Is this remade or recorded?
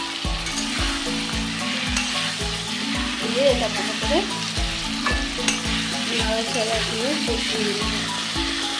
recorded